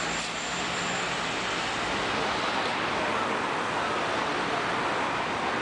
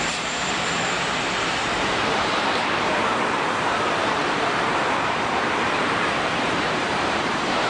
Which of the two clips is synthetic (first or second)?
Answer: second